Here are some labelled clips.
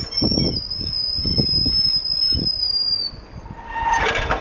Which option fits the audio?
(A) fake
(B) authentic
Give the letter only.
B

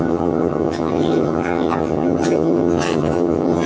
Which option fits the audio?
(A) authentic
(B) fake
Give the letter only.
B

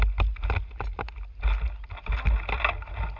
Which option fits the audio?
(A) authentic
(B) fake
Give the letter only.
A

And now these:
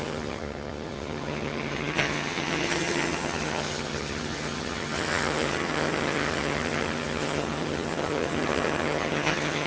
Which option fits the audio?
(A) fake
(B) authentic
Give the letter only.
A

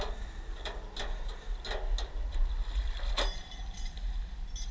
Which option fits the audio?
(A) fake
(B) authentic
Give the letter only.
B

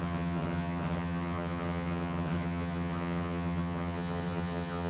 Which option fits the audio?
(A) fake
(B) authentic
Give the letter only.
A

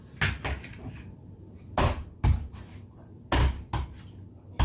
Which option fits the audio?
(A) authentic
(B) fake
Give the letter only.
A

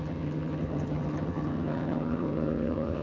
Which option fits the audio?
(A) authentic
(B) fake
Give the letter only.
B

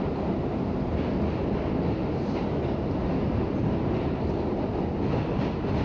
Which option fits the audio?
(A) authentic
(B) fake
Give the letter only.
A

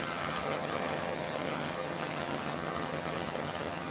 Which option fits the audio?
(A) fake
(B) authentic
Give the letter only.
A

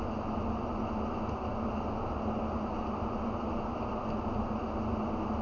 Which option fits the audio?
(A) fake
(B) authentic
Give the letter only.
B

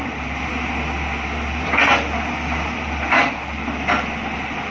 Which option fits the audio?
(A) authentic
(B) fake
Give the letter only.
A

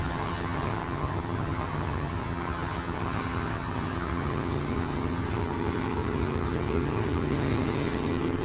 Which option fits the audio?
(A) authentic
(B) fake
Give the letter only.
B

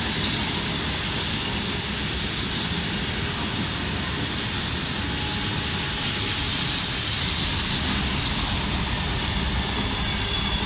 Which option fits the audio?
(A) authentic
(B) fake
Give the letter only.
A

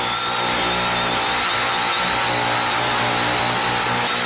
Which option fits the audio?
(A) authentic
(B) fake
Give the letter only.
A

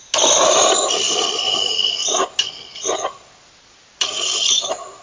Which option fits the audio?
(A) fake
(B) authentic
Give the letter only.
B